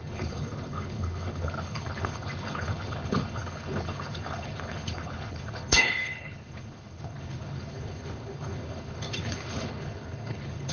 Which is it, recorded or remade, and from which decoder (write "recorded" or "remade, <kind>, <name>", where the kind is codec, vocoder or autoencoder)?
remade, codec, HILCodec